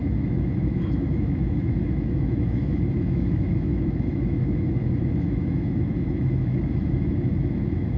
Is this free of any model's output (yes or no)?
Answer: no